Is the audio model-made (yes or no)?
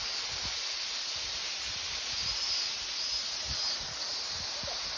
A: no